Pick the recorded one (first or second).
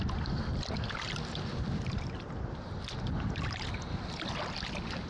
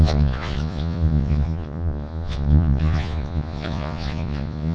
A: first